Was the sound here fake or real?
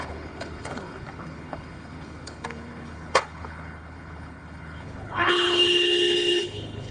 fake